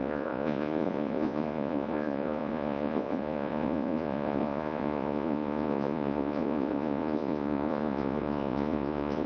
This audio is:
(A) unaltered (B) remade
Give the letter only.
B